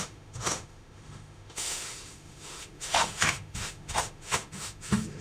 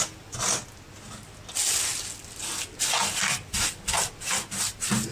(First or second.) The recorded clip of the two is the second